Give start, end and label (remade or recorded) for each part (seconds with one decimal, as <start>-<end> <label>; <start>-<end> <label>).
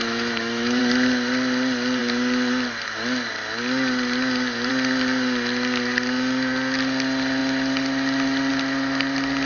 0.0-0.8 remade; 0.8-9.5 recorded